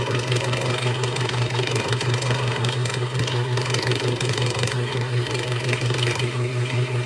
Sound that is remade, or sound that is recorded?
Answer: remade